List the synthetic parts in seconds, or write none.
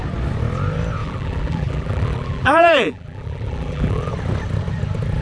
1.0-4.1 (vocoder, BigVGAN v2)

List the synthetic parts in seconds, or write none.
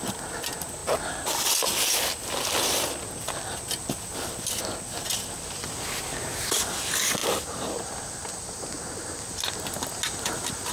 none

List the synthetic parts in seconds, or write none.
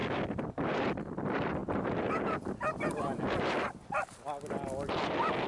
0.0-0.9 (vocoder, BigVGAN v2); 1.6-3.2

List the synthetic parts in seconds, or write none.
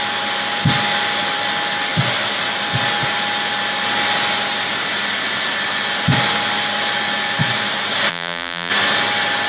8.1-8.7 (vocoder, BigVGAN v2)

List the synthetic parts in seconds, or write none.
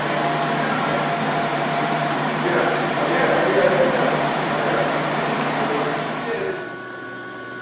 1.5-4.5 (vocoder, BigVGAN v2)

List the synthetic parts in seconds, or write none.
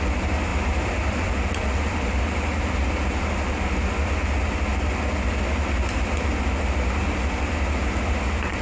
0.5-1.3 (vocoder, BigVGAN v2)